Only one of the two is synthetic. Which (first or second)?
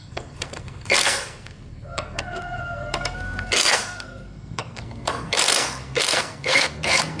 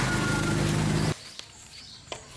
first